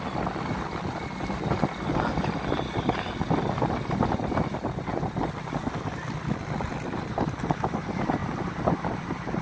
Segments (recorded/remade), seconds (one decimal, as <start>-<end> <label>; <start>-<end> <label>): 0.0-9.4 recorded